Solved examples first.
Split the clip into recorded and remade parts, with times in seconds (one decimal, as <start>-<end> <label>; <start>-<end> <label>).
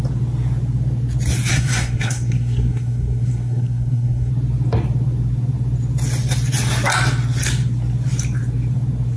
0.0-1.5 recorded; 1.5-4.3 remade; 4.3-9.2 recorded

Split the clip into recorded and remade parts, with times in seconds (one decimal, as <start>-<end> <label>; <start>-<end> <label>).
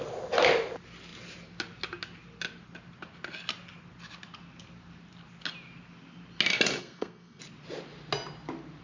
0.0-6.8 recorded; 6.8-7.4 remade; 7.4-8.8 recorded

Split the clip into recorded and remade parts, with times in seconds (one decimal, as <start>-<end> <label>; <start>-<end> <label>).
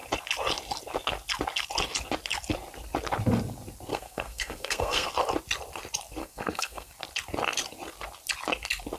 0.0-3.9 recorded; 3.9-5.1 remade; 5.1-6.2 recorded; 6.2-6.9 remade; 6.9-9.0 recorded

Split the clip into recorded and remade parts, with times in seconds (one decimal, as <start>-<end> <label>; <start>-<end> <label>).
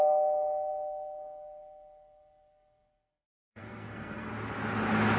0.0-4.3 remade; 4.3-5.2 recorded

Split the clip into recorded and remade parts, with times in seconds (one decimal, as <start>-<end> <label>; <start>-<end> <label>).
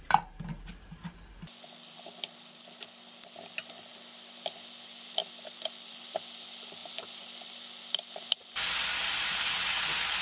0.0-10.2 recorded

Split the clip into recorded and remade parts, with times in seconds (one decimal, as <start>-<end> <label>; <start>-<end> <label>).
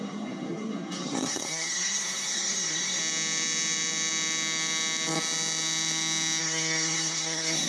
0.0-3.0 remade; 3.0-6.4 recorded; 6.4-7.7 remade